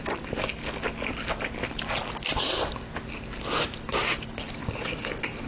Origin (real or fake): real